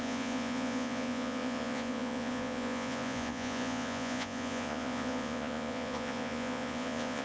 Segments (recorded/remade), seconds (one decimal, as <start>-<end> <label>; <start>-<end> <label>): 0.0-7.2 remade